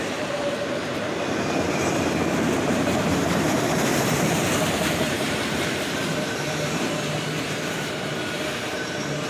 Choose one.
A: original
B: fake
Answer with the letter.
B